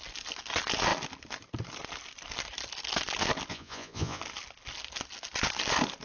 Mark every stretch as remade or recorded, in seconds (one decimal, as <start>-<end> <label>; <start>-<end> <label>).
0.0-3.5 recorded; 3.5-4.2 remade; 4.2-6.0 recorded

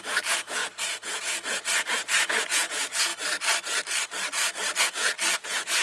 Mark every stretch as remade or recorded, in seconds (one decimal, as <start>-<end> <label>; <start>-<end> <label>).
0.0-3.1 remade; 3.1-4.8 recorded; 4.8-5.8 remade

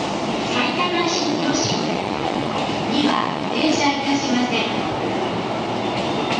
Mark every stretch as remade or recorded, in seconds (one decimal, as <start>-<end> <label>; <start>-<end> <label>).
0.0-1.0 recorded; 1.0-2.5 remade; 2.5-3.0 recorded; 3.0-3.8 remade; 3.8-6.4 recorded

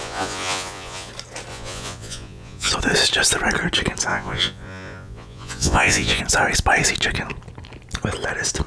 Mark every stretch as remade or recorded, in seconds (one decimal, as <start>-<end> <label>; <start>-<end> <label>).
0.0-1.1 remade; 1.1-1.5 recorded; 1.5-2.7 remade; 2.7-4.1 recorded; 4.1-6.2 remade; 6.2-8.7 recorded

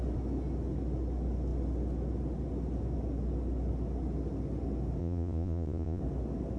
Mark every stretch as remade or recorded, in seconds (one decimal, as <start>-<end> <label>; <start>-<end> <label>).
0.0-5.0 recorded; 5.0-6.0 remade; 6.0-6.6 recorded

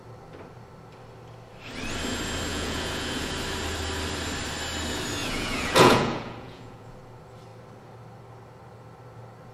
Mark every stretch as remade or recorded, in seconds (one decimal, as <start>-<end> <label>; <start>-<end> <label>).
0.0-2.5 recorded; 2.5-3.3 remade; 3.3-5.2 recorded; 5.2-7.0 remade; 7.0-9.5 recorded